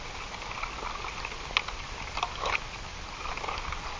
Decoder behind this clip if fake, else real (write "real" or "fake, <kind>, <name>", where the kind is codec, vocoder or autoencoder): real